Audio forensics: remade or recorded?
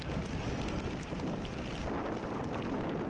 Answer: recorded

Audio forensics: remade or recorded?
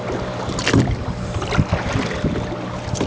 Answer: recorded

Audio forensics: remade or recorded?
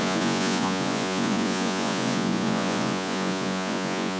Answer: remade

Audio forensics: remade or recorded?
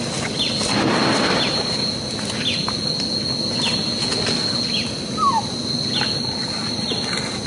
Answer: recorded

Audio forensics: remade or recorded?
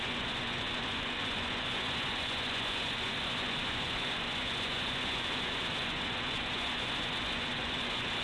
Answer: remade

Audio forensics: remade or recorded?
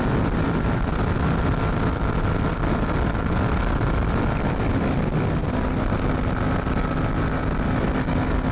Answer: recorded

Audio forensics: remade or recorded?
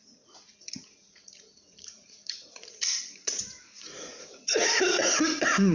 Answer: remade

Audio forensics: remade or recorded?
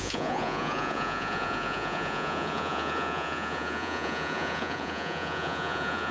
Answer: remade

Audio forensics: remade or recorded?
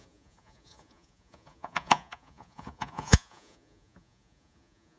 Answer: remade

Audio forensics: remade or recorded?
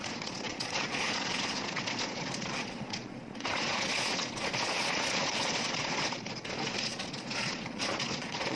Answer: remade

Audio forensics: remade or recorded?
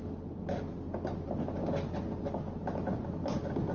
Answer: recorded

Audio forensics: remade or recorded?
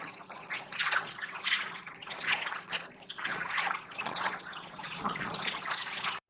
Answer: remade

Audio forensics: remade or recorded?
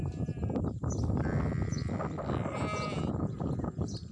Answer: recorded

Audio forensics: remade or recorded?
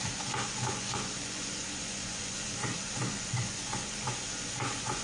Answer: remade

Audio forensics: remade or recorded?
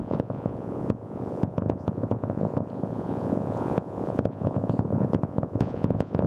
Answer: remade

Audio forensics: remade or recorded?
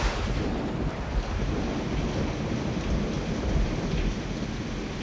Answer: recorded